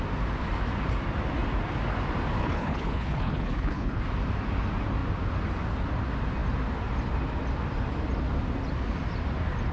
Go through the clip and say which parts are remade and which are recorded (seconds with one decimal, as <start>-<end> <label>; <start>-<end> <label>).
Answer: 0.0-2.4 recorded; 2.4-4.0 remade; 4.0-9.7 recorded

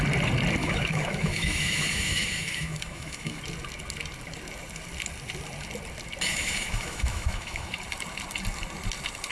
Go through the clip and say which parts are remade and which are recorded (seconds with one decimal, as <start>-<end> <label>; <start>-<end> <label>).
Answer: 0.0-0.6 recorded; 0.6-3.4 remade; 3.4-6.3 recorded; 6.3-7.7 remade; 7.7-9.3 recorded

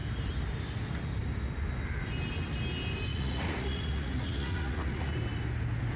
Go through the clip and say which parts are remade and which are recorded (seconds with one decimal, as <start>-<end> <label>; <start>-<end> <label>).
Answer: 0.0-3.1 recorded; 3.1-5.1 remade; 5.1-6.0 recorded

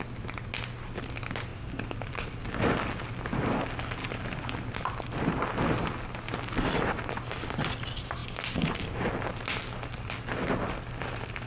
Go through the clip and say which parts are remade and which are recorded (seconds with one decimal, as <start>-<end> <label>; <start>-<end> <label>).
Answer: 0.0-1.5 recorded; 1.5-2.3 remade; 2.3-4.0 recorded; 4.0-5.2 remade; 5.2-10.6 recorded; 10.6-11.5 remade

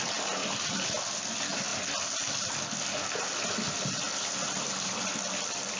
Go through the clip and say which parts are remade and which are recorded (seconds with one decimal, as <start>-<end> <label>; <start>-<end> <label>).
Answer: 0.0-5.8 recorded

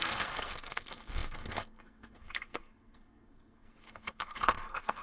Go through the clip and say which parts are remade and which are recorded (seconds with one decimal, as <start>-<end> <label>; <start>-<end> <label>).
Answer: 0.0-5.0 remade

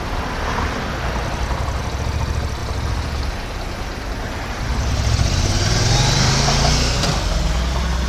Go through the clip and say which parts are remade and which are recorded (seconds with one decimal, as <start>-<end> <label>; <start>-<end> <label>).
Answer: 0.0-2.6 recorded; 2.6-6.3 remade; 6.3-8.1 recorded

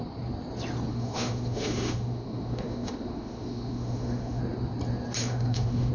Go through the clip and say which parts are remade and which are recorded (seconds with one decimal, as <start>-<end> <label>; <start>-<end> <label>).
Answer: 0.0-0.9 recorded; 0.9-4.4 remade; 4.4-5.2 recorded; 5.2-5.9 remade